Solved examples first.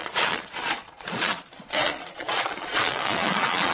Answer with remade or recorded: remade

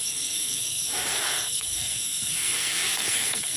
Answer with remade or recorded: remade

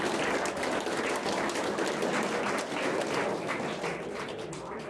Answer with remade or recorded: recorded